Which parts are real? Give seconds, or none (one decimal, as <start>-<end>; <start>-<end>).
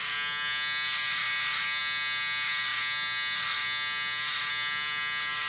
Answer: 0.0-5.5